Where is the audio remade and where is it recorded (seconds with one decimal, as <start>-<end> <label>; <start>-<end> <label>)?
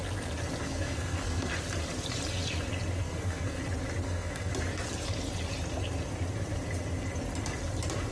0.0-0.6 recorded; 0.6-1.5 remade; 1.5-3.0 recorded; 3.0-3.6 remade; 3.6-4.0 recorded; 4.0-4.5 remade; 4.5-8.1 recorded